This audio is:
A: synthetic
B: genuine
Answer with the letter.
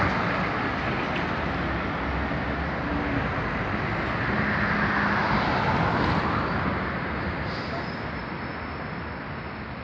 B